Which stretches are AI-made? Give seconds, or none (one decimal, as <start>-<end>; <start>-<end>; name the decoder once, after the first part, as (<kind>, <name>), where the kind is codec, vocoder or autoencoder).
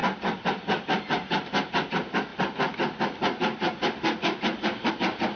none